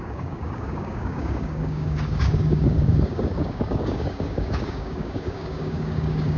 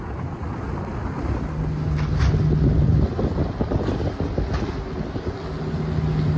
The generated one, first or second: first